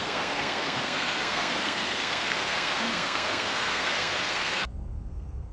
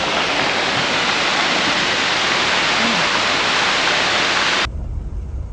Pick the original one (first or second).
second